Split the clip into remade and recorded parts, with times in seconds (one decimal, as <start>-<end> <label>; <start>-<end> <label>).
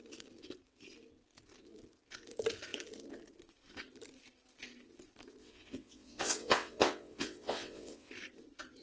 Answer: 0.0-5.4 recorded; 5.4-8.1 remade; 8.1-8.8 recorded